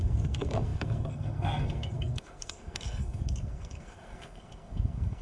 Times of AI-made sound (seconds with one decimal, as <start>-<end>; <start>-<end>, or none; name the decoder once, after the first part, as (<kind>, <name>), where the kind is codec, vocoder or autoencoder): 0.0-5.2 (codec, SNAC)